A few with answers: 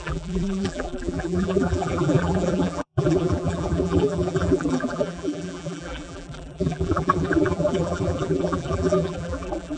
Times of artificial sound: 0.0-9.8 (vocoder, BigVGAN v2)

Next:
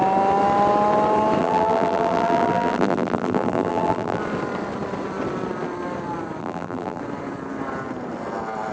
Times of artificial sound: 1.4-4.2 (vocoder, BigVGAN v2); 6.4-7.0

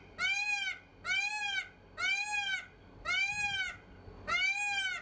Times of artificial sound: none

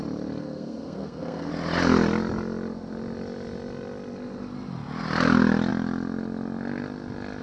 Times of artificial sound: 0.4-1.5 (codec, SNAC)

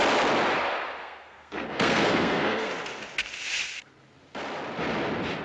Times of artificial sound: 1.0-2.7 (codec, SNAC)